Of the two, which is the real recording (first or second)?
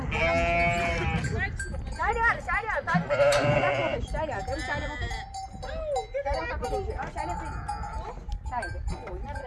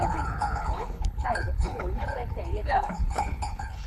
first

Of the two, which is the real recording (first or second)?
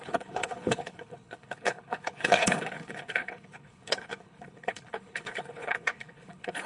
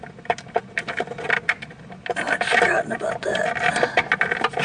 second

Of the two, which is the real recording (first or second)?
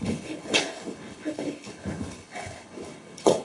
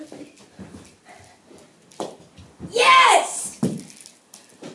second